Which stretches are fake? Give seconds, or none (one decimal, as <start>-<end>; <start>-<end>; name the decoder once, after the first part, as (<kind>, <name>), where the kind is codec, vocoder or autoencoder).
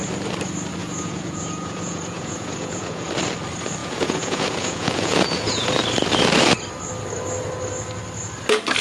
0.8-3.1 (vocoder, Vocos); 3.8-5.7